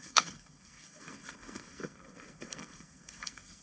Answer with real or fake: fake